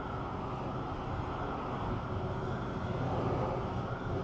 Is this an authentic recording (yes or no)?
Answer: yes